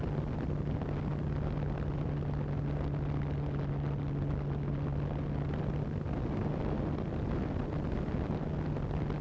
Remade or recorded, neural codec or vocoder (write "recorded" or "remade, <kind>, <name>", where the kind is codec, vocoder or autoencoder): recorded